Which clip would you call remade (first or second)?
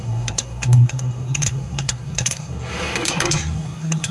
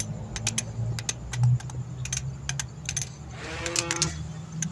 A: first